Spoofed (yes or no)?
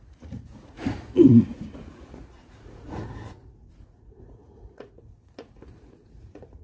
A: yes